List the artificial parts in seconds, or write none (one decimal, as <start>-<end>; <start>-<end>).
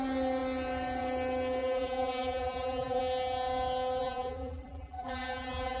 1.6-3.0; 4.0-5.8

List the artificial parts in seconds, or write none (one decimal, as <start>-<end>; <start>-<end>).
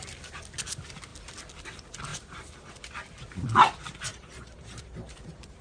2.1-2.8; 4.1-5.6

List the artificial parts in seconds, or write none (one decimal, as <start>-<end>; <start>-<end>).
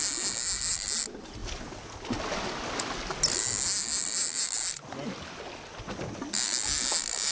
none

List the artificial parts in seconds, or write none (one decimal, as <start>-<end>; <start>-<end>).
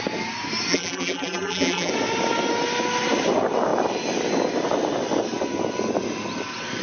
0.7-1.9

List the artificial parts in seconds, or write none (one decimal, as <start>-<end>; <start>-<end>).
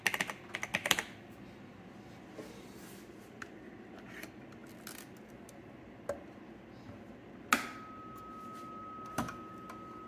none